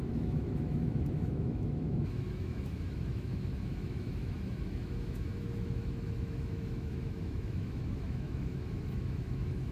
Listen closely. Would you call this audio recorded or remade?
remade